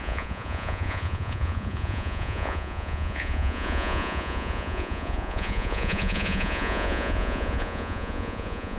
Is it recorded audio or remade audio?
remade